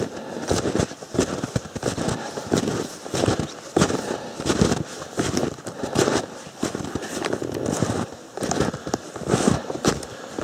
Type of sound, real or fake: real